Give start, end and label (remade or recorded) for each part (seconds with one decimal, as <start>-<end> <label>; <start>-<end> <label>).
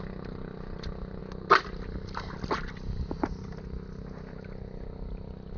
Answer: 0.0-5.6 recorded